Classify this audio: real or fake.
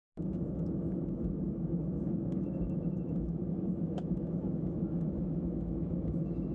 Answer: fake